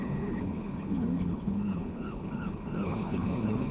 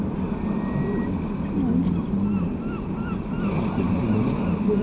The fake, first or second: first